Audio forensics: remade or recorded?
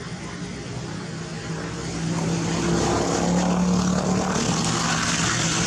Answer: recorded